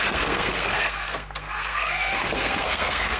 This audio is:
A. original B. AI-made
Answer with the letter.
B